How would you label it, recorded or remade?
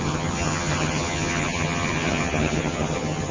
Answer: remade